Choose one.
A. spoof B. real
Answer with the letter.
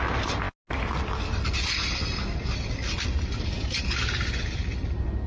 B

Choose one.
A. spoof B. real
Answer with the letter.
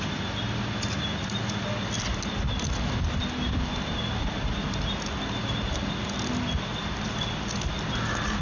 B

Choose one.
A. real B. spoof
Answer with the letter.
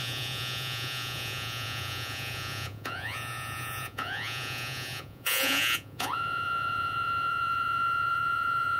B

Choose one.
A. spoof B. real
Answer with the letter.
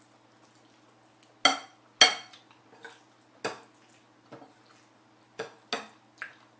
B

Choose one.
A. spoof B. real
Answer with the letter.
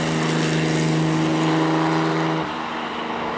B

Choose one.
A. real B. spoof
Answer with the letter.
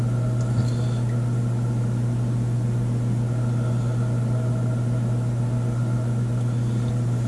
A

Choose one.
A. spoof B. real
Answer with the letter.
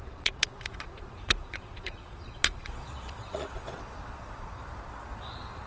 A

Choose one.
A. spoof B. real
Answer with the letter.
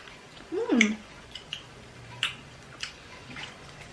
A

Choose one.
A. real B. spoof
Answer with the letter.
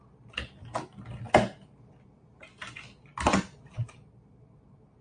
A